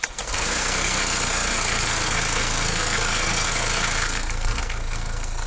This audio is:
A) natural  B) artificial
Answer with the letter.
B